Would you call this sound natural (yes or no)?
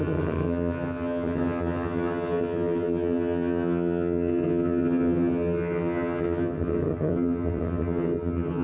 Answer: no